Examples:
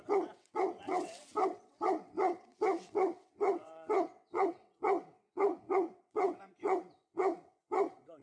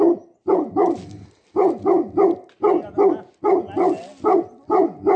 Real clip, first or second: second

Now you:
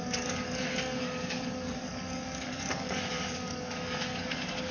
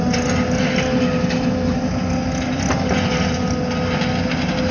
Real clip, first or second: second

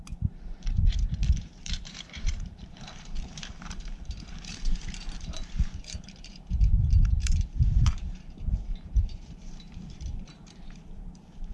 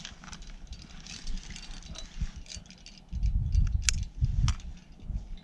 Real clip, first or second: second